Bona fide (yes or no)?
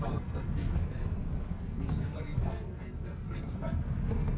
no